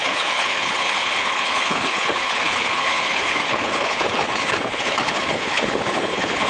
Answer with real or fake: fake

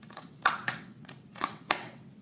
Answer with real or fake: fake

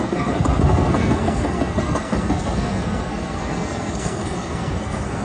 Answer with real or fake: fake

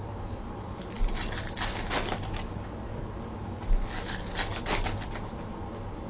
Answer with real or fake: real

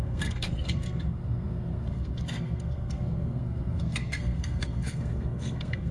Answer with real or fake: fake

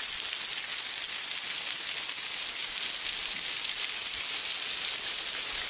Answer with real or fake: real